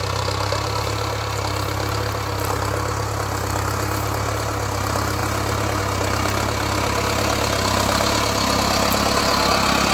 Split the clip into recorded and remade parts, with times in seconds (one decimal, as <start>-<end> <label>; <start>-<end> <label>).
0.0-9.9 recorded